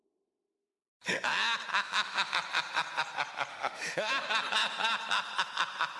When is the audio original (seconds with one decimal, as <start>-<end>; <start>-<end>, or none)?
0.0-1.7; 2.3-3.5; 4.1-6.0